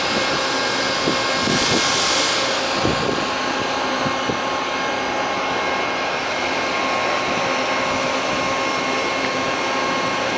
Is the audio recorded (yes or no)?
yes